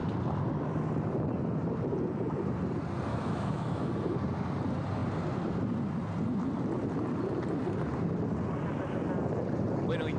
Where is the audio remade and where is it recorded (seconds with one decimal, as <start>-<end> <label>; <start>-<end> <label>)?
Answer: 0.0-3.1 recorded; 3.1-3.9 remade; 3.9-10.2 recorded